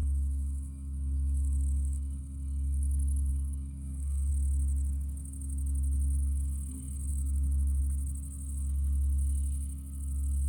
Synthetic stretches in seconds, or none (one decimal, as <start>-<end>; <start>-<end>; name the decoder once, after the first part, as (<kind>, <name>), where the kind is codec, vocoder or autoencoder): 0.0-2.2 (codec, DAC); 3.3-4.3; 7.1-7.8